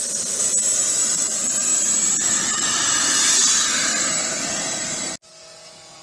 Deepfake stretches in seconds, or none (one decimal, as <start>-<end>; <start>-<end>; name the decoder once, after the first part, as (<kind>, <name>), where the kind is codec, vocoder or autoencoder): none